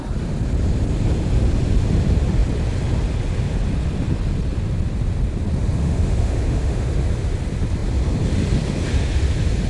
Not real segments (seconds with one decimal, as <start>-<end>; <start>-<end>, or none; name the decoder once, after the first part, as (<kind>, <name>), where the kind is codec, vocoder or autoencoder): 5.8-6.8 (autoencoder, DAC-VAE)